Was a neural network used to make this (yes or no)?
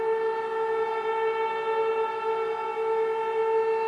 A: no